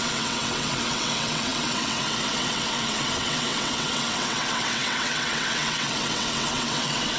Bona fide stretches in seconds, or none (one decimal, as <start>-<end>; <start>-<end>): none